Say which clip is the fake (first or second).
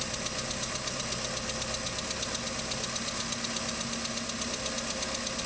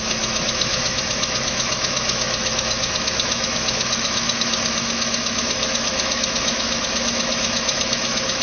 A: second